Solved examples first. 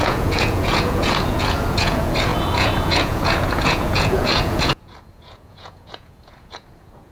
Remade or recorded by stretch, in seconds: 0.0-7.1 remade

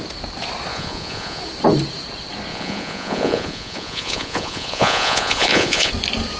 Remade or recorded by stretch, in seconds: 0.0-0.7 recorded; 0.7-1.4 remade; 1.4-2.5 recorded; 2.5-5.9 remade; 5.9-6.4 recorded

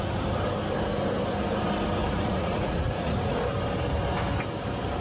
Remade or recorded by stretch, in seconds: 0.0-2.0 recorded; 2.0-3.4 remade; 3.4-5.0 recorded

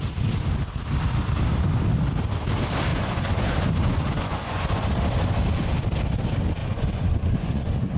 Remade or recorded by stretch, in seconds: 0.0-2.9 recorded; 2.9-4.9 remade; 4.9-6.6 recorded; 6.6-8.0 remade

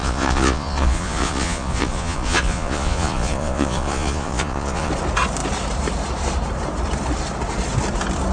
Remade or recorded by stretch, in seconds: 0.0-4.9 remade; 4.9-8.3 recorded

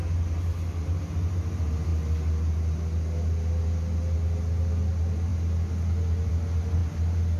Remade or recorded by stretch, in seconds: 0.0-7.4 recorded

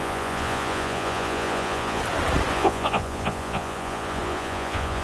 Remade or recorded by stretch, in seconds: 0.0-2.0 remade; 2.0-2.5 recorded; 2.5-5.0 remade